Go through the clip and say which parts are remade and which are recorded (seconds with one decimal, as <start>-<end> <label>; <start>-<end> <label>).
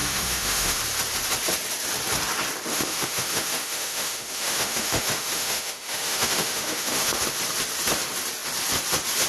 0.0-0.8 remade; 0.8-2.7 recorded; 2.7-7.2 remade; 7.2-9.3 recorded